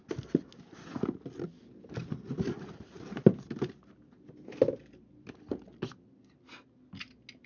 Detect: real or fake real